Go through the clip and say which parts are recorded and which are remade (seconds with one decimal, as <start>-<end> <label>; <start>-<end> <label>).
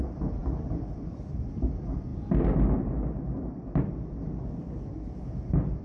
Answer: 0.0-5.8 recorded